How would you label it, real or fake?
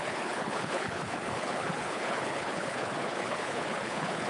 fake